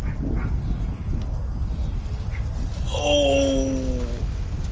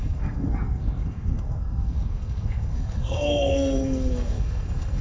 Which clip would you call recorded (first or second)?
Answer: first